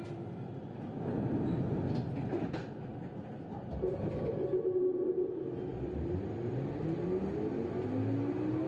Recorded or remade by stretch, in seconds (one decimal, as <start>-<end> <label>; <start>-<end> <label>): 0.0-2.9 recorded; 2.9-3.7 remade; 3.7-8.7 recorded